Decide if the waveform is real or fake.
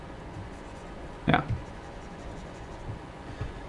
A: fake